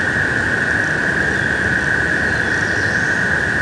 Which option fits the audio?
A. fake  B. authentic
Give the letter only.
B